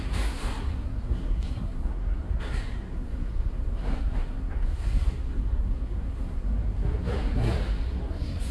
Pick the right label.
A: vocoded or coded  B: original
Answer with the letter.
A